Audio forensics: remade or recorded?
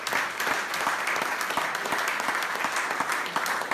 remade